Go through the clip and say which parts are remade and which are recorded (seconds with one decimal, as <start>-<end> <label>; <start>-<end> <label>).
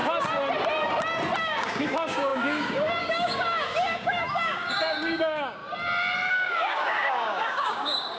0.0-1.4 recorded; 1.4-5.6 remade; 5.6-6.3 recorded; 6.3-8.2 remade